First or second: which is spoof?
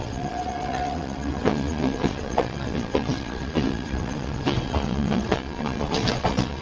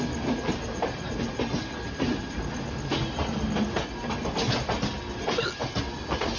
first